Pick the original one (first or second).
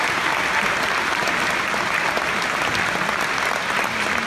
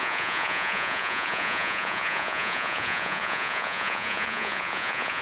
first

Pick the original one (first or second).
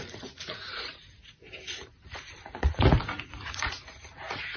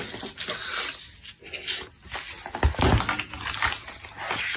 second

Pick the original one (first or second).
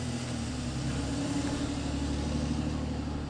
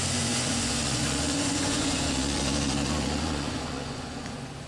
first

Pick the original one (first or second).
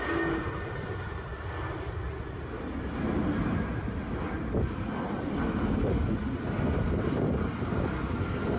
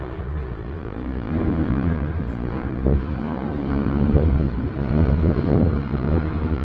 first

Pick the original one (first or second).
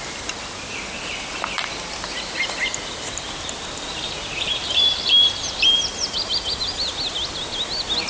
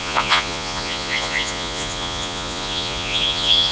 first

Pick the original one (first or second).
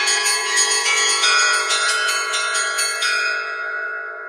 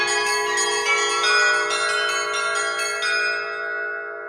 second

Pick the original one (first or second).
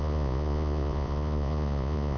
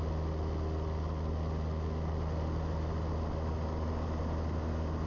second